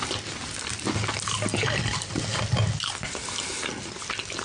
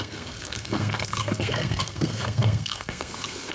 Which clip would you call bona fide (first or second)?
first